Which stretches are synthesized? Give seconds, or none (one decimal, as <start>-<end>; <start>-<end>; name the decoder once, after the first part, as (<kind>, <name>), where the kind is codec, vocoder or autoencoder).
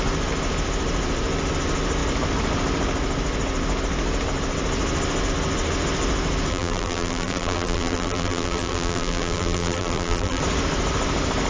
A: 6.5-10.4 (vocoder, BigVGAN v2)